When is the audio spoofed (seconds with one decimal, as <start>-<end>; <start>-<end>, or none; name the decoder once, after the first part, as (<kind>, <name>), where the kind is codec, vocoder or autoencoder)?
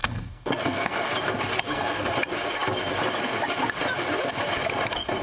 0.0-1.1 (codec, SNAC); 1.5-2.1